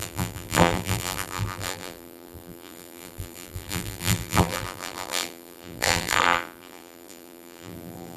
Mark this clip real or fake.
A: fake